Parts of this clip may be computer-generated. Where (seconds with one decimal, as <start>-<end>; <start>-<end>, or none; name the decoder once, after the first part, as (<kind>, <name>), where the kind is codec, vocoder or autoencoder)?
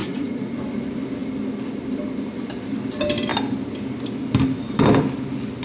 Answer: 0.0-0.5 (vocoder, Vocos)